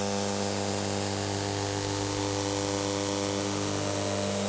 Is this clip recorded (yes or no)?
no